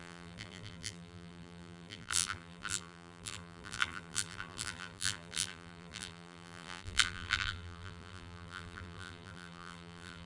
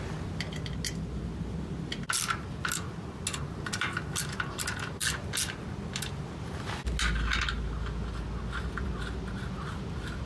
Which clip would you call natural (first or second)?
second